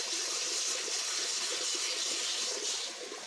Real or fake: real